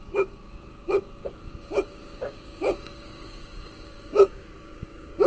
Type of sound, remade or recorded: remade